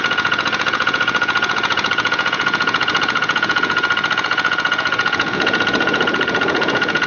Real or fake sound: fake